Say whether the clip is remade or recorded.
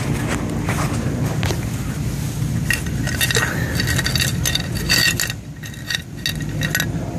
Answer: recorded